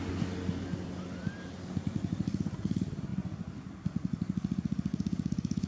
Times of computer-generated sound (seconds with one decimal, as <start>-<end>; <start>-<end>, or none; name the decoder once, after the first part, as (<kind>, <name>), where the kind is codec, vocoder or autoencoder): 4.9-5.7 (codec, DAC)